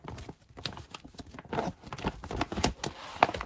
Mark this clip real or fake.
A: real